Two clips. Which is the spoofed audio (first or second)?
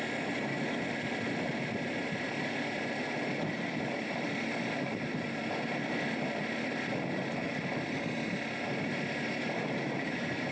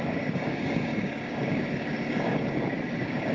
second